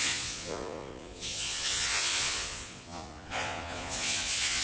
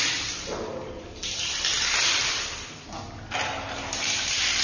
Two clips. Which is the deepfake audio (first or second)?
first